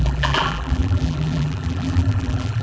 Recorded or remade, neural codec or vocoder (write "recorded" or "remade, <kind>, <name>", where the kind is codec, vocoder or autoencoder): remade, vocoder, BigVGAN v2